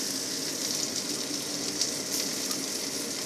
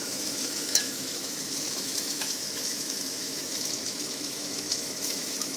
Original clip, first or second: first